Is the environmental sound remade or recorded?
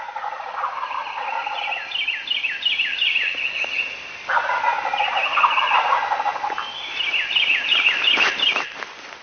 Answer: remade